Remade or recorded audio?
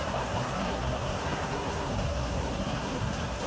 remade